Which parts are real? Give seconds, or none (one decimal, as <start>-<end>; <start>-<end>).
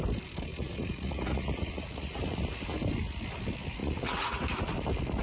0.0-0.5; 2.2-3.8; 4.4-5.2